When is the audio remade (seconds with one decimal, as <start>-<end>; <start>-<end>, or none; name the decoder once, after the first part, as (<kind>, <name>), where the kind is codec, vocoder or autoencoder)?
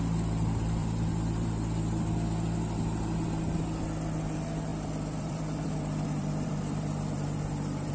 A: 0.8-2.0 (vocoder, BigVGAN v2); 4.7-7.9